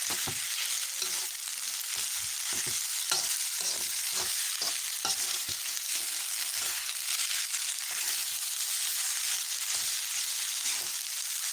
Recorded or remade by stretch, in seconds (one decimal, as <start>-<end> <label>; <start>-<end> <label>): 0.0-5.3 recorded; 5.3-7.8 remade; 7.8-11.5 recorded